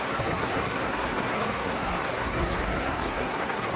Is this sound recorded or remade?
remade